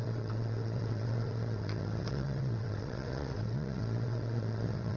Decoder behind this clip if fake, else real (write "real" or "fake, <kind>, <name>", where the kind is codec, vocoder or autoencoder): fake, vocoder, WaveNeXt